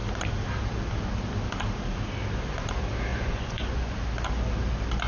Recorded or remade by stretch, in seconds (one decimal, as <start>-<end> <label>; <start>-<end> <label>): 0.0-3.1 recorded; 3.1-4.0 remade; 4.0-5.1 recorded